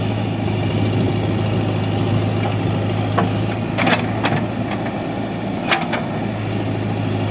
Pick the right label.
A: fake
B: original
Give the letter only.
B